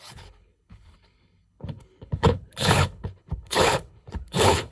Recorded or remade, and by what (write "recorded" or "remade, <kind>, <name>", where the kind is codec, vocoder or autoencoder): remade, codec, HILCodec